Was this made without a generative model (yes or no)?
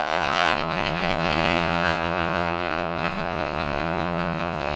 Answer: no